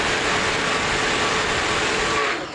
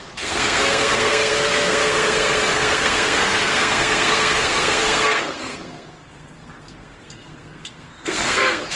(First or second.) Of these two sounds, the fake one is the second